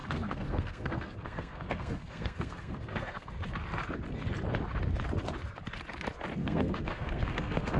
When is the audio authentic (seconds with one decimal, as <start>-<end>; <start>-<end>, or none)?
3.3-6.4